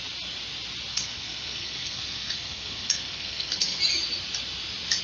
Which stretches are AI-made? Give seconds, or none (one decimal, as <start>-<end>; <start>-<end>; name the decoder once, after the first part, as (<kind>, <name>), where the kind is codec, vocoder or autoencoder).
0.9-3.8 (codec, SNAC)